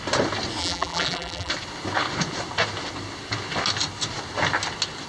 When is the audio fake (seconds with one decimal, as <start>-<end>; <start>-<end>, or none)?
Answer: 0.6-1.5